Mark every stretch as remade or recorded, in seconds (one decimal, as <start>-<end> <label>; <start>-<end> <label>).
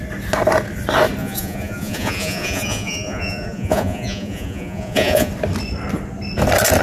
0.0-1.2 recorded; 1.2-5.3 remade; 5.3-6.8 recorded